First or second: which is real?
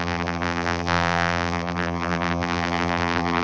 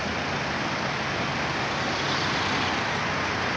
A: second